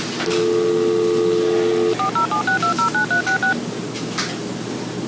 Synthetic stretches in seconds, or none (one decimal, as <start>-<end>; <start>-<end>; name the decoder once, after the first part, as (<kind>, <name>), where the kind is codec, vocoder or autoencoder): none